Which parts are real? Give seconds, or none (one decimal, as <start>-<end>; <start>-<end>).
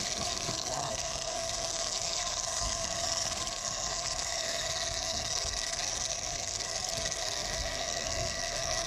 none